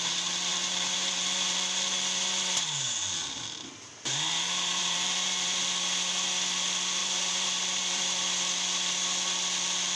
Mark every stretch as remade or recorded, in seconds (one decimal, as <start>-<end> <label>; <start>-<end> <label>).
0.0-0.5 recorded; 0.5-3.7 remade; 3.7-4.8 recorded; 4.8-5.6 remade; 5.6-7.0 recorded; 7.0-8.0 remade; 8.0-10.0 recorded